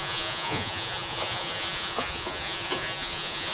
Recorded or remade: remade